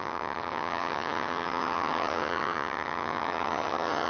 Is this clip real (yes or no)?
no